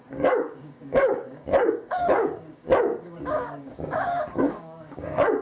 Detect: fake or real fake